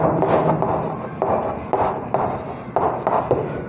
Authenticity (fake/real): real